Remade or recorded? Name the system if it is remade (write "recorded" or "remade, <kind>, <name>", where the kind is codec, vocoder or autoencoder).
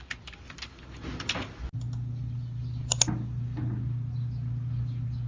recorded